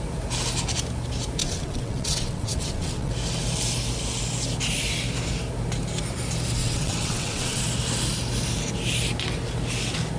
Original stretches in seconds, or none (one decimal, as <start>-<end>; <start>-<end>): 0.0-1.4; 3.1-6.6; 7.6-10.2